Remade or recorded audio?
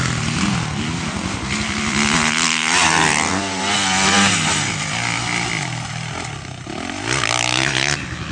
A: recorded